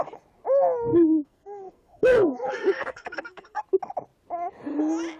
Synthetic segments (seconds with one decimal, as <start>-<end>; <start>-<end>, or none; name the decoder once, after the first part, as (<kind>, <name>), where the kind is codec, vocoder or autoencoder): 0.9-3.6 (codec, SNAC)